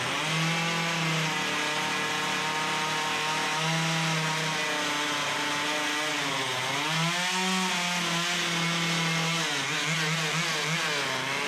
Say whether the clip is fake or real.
real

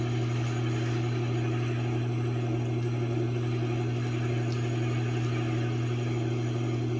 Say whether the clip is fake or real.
real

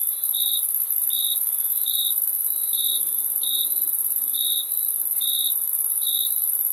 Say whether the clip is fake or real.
real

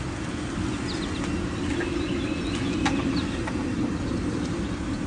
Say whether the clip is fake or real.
real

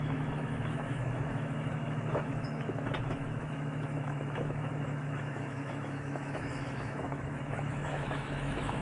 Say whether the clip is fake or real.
fake